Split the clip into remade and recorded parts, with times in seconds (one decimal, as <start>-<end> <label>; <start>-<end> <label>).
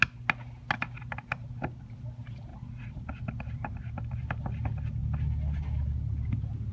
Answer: 0.0-6.7 recorded